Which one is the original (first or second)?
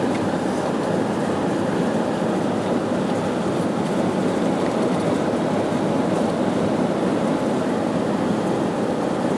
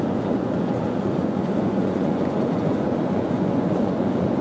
first